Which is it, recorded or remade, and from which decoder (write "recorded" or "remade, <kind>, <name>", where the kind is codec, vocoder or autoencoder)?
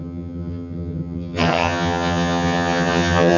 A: remade, vocoder, HiFi-GAN